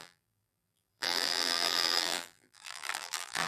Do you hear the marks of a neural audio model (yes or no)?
yes